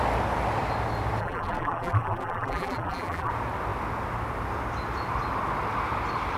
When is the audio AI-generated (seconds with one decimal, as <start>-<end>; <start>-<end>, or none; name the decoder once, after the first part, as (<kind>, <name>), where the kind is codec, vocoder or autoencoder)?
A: 1.2-3.3 (vocoder, BigVGAN v2)